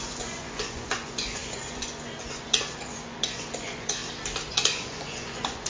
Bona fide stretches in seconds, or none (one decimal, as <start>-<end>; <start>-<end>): 4.0-4.5